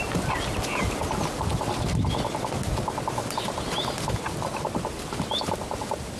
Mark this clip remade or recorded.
recorded